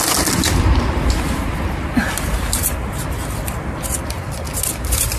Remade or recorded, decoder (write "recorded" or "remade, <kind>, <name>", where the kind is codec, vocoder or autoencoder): recorded